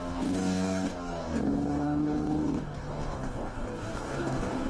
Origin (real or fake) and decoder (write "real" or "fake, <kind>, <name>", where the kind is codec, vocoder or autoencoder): fake, codec, DAC